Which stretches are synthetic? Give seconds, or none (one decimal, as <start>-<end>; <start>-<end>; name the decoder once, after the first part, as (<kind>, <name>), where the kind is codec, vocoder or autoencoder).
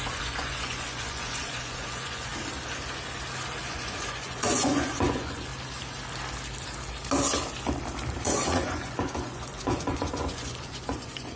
0.0-2.3 (vocoder, Vocos); 3.6-5.5; 8.2-11.4